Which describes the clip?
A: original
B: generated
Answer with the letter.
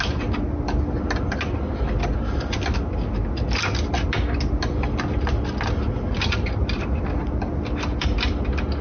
A